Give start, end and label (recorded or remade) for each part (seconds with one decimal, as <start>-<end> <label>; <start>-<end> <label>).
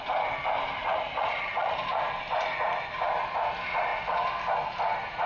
0.0-0.8 recorded; 0.8-2.0 remade; 2.0-5.3 recorded